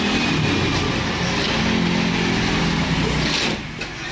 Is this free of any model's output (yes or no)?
yes